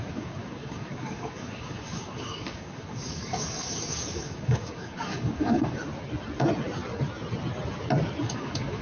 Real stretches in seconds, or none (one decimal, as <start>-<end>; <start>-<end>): 5.8-8.2